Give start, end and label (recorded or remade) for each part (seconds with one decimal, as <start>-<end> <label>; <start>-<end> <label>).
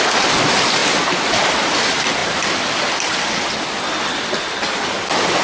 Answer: 0.0-5.4 remade